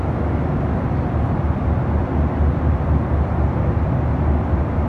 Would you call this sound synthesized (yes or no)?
yes